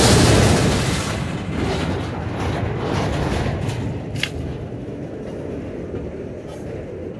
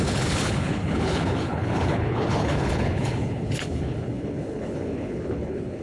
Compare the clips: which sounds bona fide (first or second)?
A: first